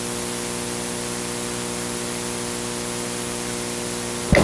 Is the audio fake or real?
real